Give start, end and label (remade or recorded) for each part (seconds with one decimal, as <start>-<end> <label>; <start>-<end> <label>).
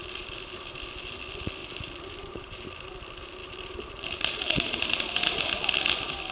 0.0-1.6 recorded; 1.6-2.7 remade; 2.7-3.4 recorded; 3.4-5.4 remade; 5.4-6.3 recorded